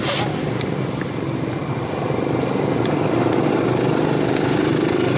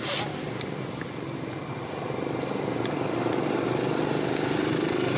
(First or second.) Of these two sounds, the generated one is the first